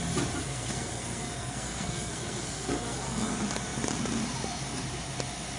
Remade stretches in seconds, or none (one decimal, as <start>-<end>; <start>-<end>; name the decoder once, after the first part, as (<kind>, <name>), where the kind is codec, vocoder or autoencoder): 0.4-3.3 (codec, SNAC)